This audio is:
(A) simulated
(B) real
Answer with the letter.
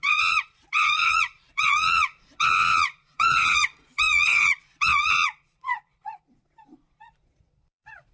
A